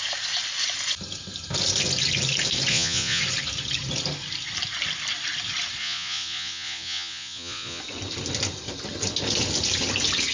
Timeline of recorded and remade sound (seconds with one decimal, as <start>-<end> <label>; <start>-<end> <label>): 0.0-2.7 recorded; 2.7-3.2 remade; 3.2-5.8 recorded; 5.8-7.8 remade; 7.8-10.3 recorded